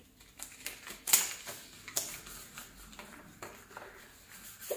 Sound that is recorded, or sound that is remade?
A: recorded